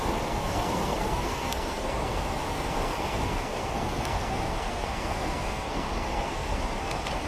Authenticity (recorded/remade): remade